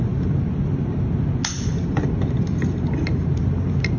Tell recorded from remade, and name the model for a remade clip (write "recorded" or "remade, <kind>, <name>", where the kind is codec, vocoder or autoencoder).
recorded